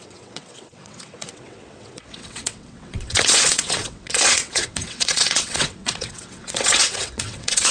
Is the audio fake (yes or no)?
yes